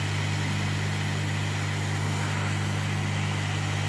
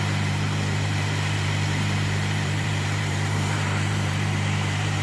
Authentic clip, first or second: first